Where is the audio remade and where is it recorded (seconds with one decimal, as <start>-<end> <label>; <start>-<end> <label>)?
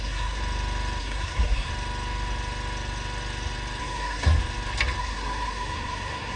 0.0-0.4 remade; 0.4-1.0 recorded; 1.0-1.7 remade; 1.7-3.8 recorded; 3.8-4.4 remade; 4.4-5.0 recorded; 5.0-6.4 remade